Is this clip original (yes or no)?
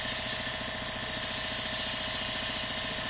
yes